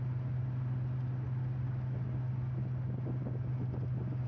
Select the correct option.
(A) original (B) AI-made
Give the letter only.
A